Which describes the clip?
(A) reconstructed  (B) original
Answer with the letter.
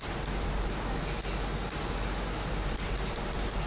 B